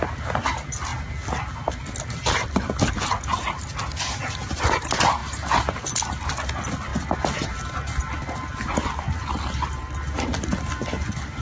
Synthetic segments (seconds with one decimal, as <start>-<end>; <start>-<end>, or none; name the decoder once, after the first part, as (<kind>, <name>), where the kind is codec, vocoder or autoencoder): none